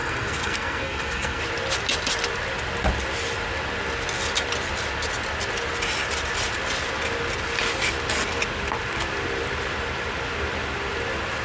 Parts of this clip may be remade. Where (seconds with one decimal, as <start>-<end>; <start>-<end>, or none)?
0.0-1.4